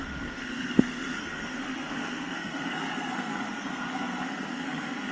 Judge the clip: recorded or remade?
remade